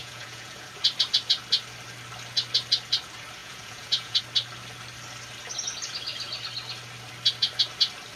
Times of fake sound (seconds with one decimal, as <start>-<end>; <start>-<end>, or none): 0.0-0.7; 3.4-4.2